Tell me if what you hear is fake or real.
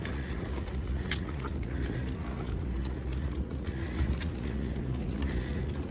fake